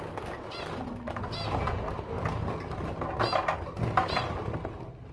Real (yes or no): yes